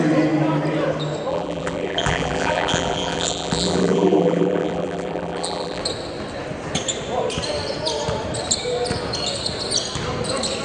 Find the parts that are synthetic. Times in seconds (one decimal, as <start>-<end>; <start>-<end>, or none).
1.3-5.8

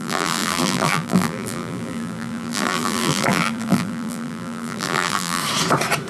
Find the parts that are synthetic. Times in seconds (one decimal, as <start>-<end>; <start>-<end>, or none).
0.0-5.4

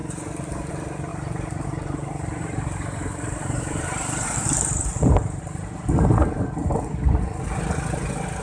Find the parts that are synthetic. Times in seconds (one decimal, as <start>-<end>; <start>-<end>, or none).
1.1-5.9

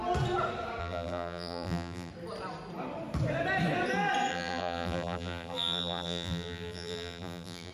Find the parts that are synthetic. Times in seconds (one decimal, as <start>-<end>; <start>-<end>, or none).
0.8-2.1; 4.3-7.7

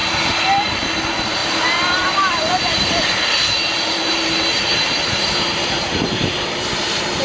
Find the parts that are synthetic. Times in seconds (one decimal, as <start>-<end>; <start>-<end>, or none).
0.6-7.2

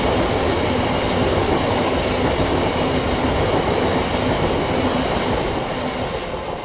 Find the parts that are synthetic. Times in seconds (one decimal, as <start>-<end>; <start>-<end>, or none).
none